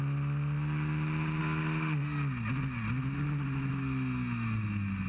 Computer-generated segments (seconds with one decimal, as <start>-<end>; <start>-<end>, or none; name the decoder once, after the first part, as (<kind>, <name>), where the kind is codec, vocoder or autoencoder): none